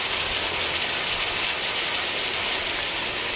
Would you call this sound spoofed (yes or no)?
no